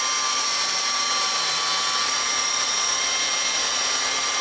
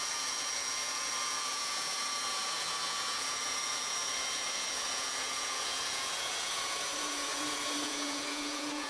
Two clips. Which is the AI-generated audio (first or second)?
second